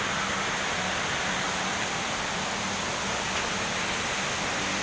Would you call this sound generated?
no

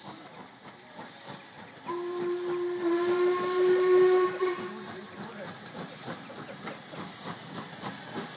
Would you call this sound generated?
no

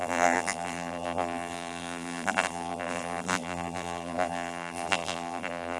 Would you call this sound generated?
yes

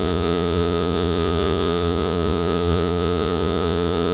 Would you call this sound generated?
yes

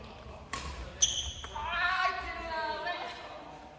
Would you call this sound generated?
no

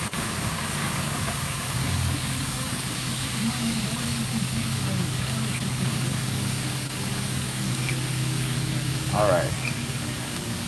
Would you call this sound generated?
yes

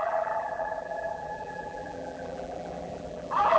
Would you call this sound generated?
yes